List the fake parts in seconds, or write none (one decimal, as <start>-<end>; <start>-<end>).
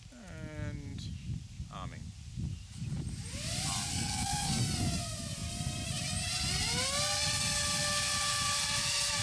3.9-4.6